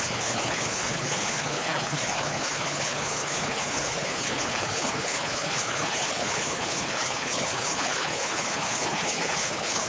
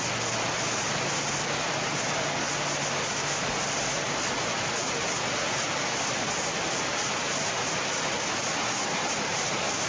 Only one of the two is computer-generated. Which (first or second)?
first